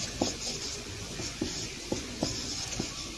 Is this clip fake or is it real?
fake